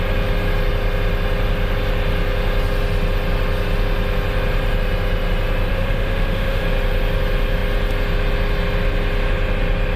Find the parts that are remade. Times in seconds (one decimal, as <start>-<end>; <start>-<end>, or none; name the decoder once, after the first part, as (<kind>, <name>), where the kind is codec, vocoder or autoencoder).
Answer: 5.7-6.6 (autoencoder, DAC-VAE)

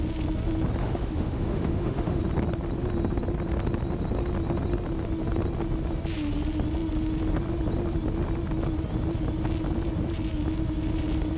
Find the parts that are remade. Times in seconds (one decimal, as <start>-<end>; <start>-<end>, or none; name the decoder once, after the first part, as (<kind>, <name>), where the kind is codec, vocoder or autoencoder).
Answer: 0.8-2.2 (autoencoder, DAC-VAE)

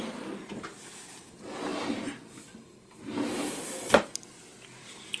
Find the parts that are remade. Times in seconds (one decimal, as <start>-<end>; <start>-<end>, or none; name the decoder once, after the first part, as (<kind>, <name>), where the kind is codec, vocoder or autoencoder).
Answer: none

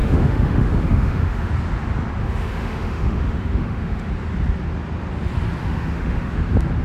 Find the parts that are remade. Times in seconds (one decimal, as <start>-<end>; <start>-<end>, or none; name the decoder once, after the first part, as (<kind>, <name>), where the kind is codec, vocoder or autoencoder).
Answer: 0.0-1.5 (autoencoder, DAC-VAE); 2.2-4.1; 5.6-6.3

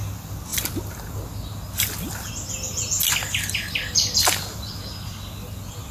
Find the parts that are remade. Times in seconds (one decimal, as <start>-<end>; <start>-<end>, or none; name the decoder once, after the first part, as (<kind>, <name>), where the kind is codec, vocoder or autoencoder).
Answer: none

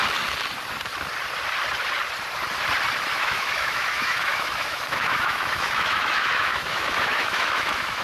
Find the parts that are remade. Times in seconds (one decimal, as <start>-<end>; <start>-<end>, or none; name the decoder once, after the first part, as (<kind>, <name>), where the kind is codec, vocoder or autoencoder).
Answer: 3.1-8.0 (autoencoder, DAC-VAE)

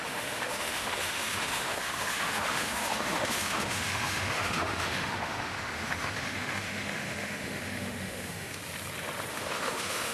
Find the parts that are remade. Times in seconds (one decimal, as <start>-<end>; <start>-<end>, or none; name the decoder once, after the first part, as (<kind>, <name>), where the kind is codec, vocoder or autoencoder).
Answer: 0.0-8.6 (autoencoder, DAC-VAE); 9.3-10.1

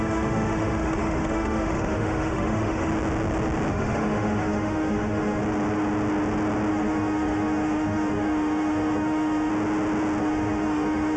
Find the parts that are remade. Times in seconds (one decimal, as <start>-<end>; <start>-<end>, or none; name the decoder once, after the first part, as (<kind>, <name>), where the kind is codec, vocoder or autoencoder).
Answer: 0.0-2.9 (autoencoder, DAC-VAE); 3.7-5.4; 6.7-9.5; 10.2-11.2